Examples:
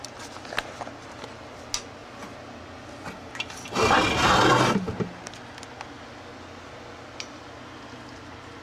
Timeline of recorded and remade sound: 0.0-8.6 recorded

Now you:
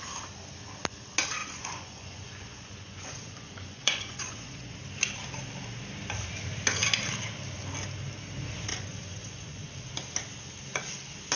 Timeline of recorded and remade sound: 0.0-1.4 recorded; 1.4-4.8 remade; 4.8-8.7 recorded; 8.7-9.7 remade; 9.7-11.3 recorded

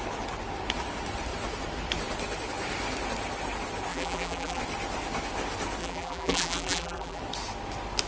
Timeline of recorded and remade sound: 0.0-3.9 recorded; 3.9-4.6 remade; 4.6-5.8 recorded; 5.8-7.2 remade; 7.2-8.1 recorded

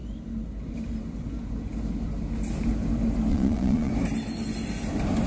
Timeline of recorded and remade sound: 0.0-3.3 recorded; 3.3-3.9 remade; 3.9-5.3 recorded

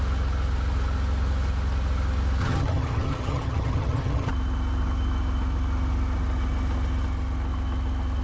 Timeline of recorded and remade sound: 0.0-2.4 recorded; 2.4-4.3 remade; 4.3-8.2 recorded